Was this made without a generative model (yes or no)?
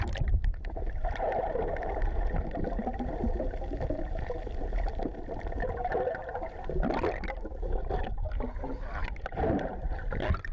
yes